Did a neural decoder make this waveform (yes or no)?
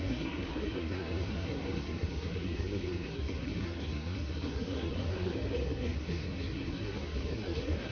yes